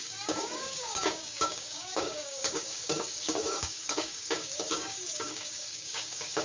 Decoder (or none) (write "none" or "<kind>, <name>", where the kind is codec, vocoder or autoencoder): codec, DAC